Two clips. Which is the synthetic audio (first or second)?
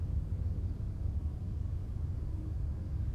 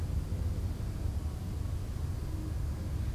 first